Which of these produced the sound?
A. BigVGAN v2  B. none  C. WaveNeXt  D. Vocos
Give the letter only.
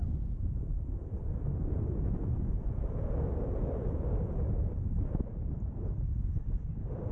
A